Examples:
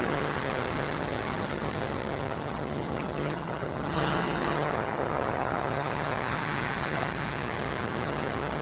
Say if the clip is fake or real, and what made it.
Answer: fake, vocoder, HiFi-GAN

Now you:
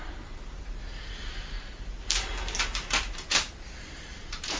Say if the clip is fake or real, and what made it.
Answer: fake, vocoder, BigVGAN v2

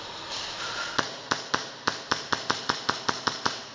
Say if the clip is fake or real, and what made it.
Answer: real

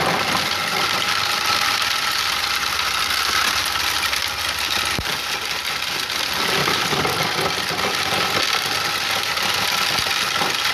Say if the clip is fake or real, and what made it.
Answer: real